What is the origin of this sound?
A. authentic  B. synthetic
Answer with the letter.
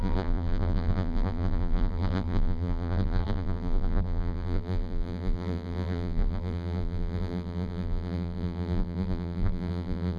B